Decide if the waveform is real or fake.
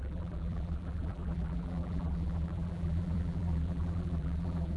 fake